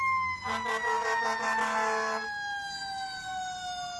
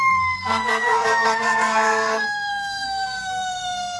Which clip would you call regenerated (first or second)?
second